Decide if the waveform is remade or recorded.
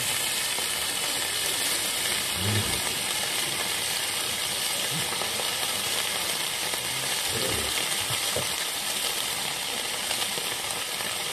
remade